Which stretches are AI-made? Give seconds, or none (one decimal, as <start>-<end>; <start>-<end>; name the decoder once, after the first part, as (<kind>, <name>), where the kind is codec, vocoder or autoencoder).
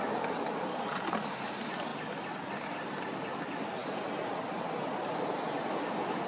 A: none